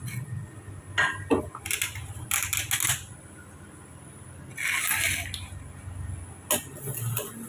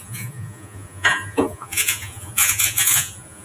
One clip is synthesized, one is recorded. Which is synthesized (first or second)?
second